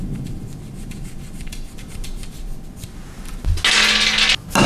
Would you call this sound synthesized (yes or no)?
no